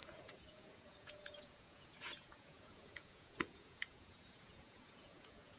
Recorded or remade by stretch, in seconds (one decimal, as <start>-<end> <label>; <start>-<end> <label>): 0.0-5.6 remade